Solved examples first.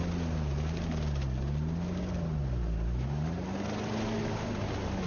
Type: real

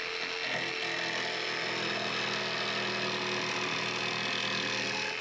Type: real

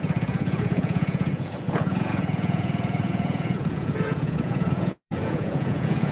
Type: fake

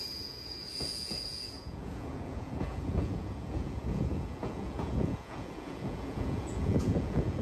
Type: fake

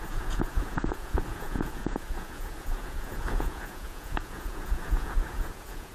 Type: fake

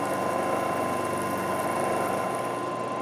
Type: real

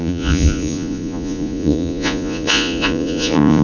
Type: fake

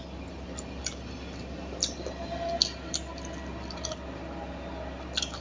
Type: real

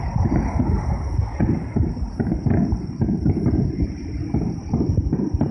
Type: real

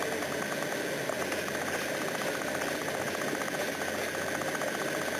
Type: real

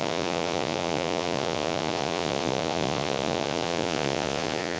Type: fake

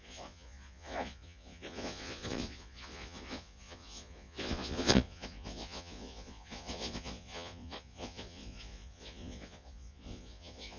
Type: fake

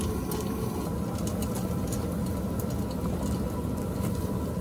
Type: real